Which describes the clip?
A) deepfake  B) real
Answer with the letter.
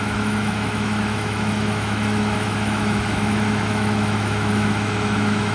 A